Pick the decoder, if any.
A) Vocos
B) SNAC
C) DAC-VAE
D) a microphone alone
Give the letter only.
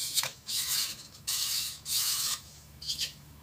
C